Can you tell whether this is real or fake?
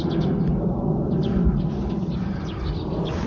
real